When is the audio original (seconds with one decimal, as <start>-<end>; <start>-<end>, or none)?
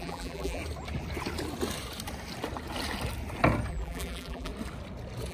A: 0.6-3.7; 4.5-5.3